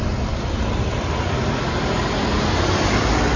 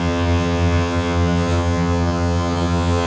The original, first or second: first